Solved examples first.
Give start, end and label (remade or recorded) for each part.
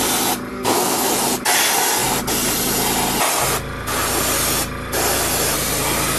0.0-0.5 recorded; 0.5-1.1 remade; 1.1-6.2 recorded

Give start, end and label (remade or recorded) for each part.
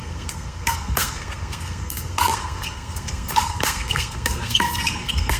0.0-5.4 remade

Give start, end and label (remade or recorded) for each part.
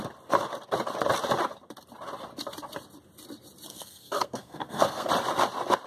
0.0-3.7 recorded; 3.7-5.1 remade; 5.1-5.9 recorded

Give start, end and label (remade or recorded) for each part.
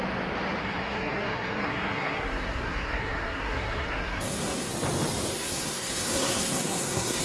0.0-0.6 recorded; 0.6-4.7 remade; 4.7-5.3 recorded; 5.3-7.2 remade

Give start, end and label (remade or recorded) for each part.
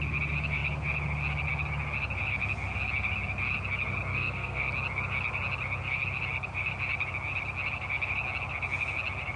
0.0-4.1 recorded; 4.1-4.7 remade; 4.7-9.4 recorded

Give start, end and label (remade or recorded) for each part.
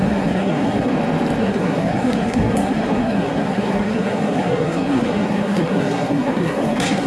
0.0-0.9 remade; 0.9-1.4 recorded; 1.4-7.1 remade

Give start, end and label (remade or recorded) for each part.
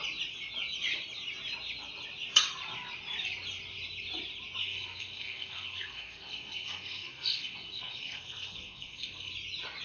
0.0-4.6 recorded; 4.6-9.3 remade; 9.3-9.8 recorded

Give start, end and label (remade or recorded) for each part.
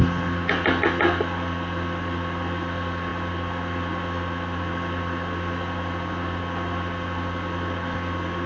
0.0-8.5 recorded